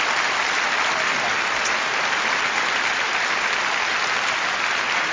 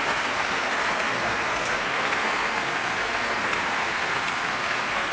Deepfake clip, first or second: second